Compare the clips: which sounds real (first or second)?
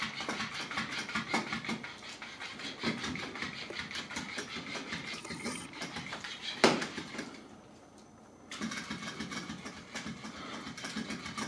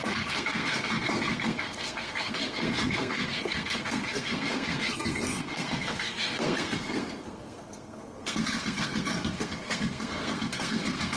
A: first